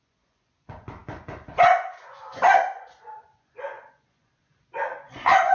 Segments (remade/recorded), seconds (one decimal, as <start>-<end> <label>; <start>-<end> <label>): 0.0-5.5 remade